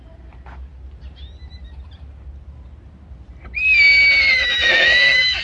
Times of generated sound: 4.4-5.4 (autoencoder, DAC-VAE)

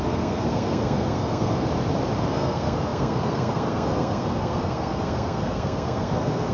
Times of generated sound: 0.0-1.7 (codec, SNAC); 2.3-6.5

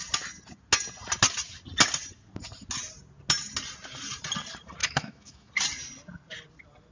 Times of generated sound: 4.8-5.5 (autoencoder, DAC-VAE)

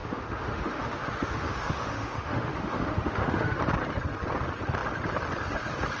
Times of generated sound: 0.0-3.6 (autoencoder, DAC-VAE)

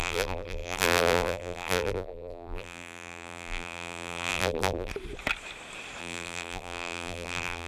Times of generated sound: 0.0-4.9 (vocoder, BigVGAN v2); 6.0-7.7

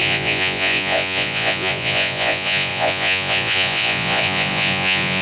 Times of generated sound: 0.0-5.2 (vocoder, Vocos)

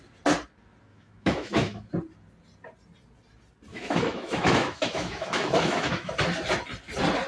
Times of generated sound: 0.9-1.9 (autoencoder, DAC-VAE); 3.7-6.1